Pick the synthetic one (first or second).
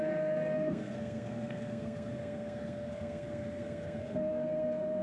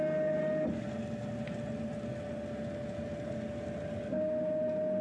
first